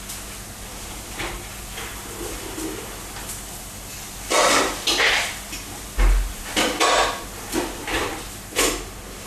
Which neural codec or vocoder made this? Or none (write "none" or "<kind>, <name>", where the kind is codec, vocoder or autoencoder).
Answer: none